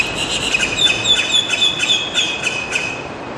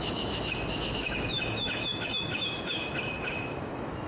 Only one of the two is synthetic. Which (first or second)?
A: second